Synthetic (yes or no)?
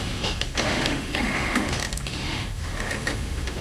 yes